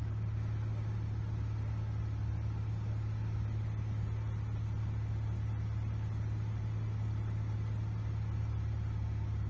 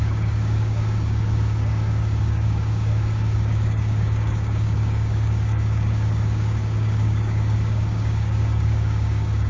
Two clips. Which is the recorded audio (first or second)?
first